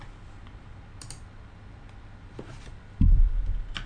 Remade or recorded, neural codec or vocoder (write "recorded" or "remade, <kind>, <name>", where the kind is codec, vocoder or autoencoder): recorded